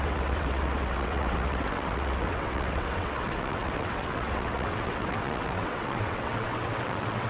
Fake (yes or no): yes